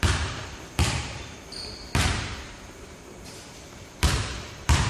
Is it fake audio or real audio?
fake